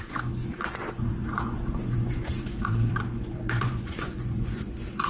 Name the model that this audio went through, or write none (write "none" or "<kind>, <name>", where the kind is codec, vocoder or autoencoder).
vocoder, Vocos